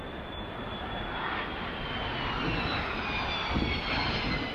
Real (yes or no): yes